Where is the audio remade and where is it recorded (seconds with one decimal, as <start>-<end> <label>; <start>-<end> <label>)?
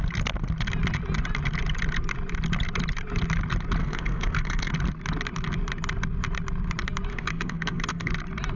0.0-3.8 recorded; 3.8-4.7 remade; 4.7-7.1 recorded; 7.1-8.1 remade; 8.1-8.6 recorded